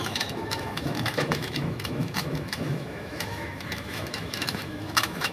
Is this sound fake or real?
fake